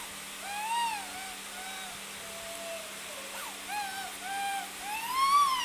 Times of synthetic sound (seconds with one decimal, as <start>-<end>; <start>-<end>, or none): 4.5-5.6